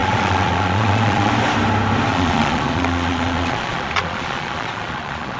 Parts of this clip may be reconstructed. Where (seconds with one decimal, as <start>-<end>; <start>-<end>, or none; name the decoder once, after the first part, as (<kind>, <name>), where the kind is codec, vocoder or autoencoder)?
0.0-1.3 (vocoder, Vocos); 2.1-5.4